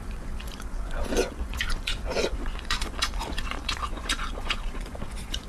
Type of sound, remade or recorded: remade